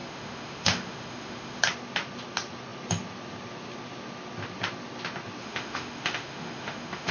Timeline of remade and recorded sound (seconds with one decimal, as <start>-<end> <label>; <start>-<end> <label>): 0.0-1.6 remade; 1.6-5.4 recorded; 5.4-7.1 remade